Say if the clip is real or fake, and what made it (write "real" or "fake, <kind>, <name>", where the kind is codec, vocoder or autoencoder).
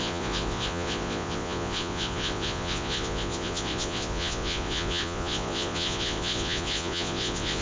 fake, vocoder, Vocos